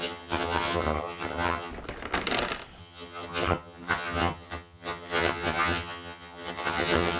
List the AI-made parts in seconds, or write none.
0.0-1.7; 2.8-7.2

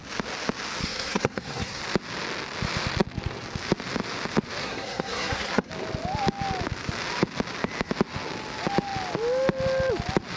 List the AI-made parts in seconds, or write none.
0.8-1.8; 4.6-5.7

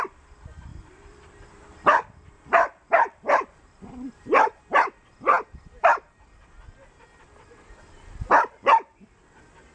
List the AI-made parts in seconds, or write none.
0.7-4.6